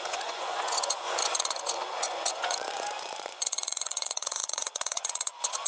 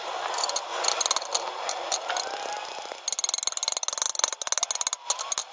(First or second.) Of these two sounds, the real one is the second